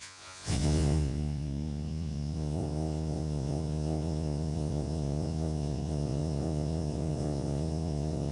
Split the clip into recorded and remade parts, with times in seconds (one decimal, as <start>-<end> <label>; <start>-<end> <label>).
0.0-8.3 remade